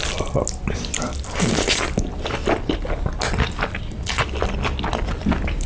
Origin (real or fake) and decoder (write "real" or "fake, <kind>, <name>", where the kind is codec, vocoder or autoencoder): real